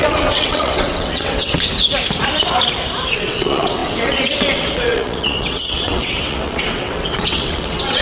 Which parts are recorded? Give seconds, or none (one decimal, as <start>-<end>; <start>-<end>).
1.7-3.1